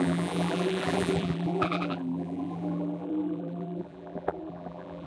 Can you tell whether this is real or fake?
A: fake